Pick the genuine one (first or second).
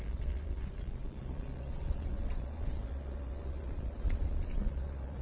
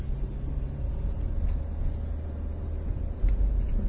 second